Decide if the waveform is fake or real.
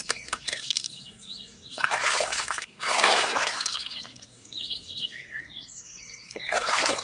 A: fake